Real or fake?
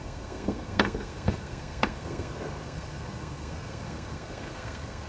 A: fake